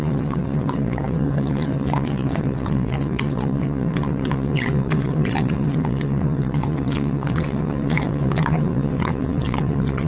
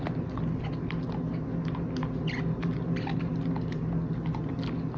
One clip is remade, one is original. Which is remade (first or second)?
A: first